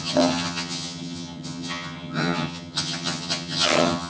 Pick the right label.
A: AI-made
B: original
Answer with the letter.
A